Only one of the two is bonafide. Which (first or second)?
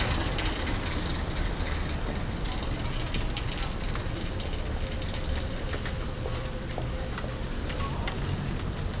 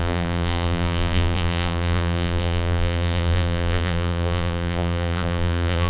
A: first